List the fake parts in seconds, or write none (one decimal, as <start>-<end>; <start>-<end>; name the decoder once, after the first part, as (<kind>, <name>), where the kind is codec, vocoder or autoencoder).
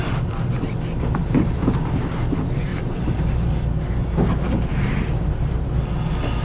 1.2-1.9 (vocoder, BigVGAN v2); 2.7-3.3; 4.7-5.8